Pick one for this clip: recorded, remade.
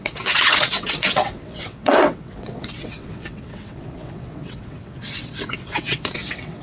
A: remade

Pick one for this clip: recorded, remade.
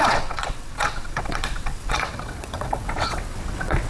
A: remade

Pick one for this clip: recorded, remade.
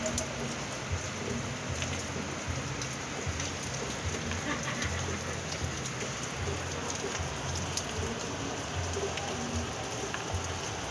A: recorded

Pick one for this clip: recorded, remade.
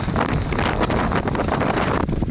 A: recorded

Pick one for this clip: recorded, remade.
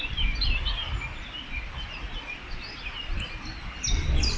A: recorded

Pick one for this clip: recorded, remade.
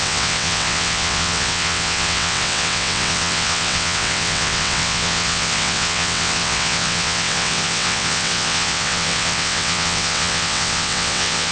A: remade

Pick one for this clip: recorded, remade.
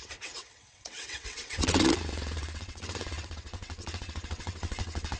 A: remade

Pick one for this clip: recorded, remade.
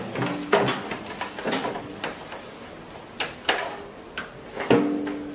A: recorded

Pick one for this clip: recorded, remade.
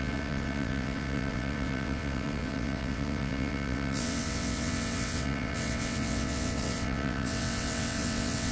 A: remade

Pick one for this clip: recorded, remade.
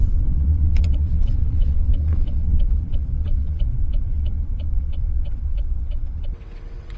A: remade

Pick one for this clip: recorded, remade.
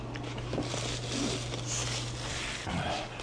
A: recorded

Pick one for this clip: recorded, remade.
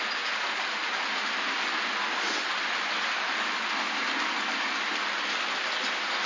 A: recorded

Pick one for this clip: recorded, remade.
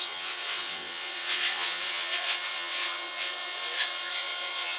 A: remade